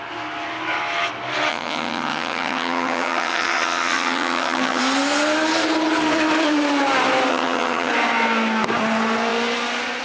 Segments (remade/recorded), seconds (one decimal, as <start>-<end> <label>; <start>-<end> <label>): 0.0-1.5 recorded; 1.5-4.8 remade; 4.8-7.3 recorded; 7.3-7.9 remade; 7.9-10.0 recorded